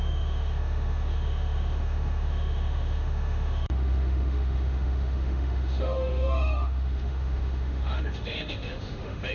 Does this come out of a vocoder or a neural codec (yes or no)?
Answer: yes